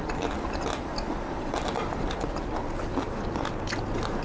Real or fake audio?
real